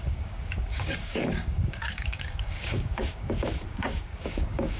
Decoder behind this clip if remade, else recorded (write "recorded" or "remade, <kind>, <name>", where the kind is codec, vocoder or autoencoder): remade, codec, DAC